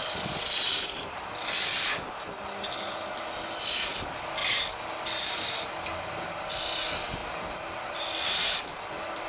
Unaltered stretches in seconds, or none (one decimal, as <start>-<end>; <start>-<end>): 0.0-9.3